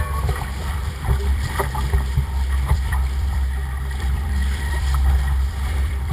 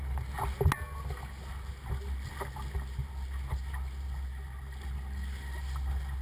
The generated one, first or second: first